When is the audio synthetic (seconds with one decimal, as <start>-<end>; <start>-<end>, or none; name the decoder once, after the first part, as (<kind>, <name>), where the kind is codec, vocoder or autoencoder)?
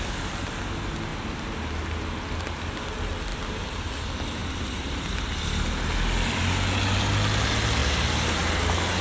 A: 1.1-2.7 (vocoder, BigVGAN v2); 3.3-3.9; 4.4-6.4; 7.8-8.3